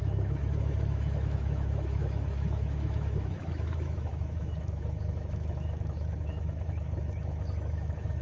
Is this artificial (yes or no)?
yes